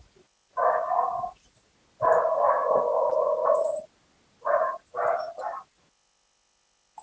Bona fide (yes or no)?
yes